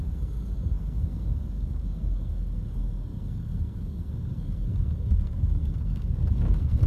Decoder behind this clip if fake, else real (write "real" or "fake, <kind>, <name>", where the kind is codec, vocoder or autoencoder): fake, codec, SNAC